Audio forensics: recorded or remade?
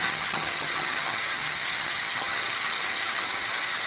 remade